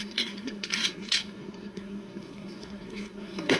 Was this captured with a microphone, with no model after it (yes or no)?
no